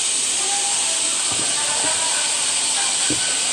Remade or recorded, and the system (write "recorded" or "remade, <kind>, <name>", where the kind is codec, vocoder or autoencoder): recorded